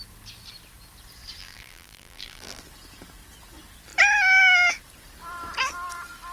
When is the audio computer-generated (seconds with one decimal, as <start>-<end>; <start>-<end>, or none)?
1.4-2.6